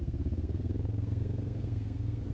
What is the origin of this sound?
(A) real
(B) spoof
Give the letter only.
B